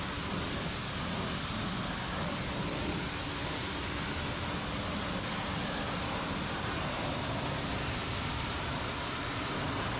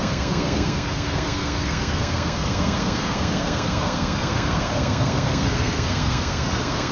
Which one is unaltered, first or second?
first